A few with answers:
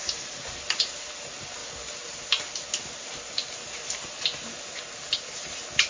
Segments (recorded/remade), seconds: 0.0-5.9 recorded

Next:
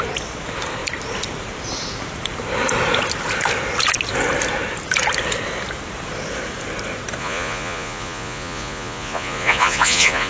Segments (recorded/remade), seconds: 0.0-7.2 recorded; 7.2-10.3 remade

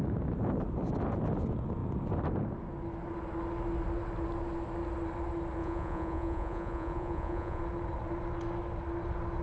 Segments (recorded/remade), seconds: 0.0-5.6 recorded; 5.6-7.6 remade; 7.6-9.4 recorded